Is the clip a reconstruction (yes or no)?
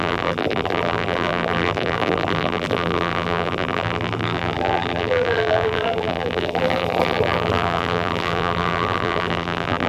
yes